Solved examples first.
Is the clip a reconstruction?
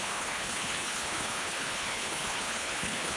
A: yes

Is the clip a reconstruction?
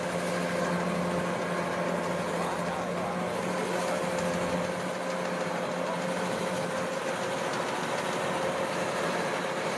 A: no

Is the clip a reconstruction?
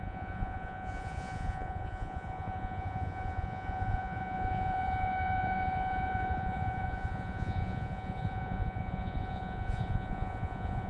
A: yes